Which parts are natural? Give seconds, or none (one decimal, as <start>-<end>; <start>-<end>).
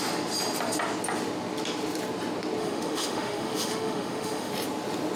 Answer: 0.0-2.6; 4.5-5.2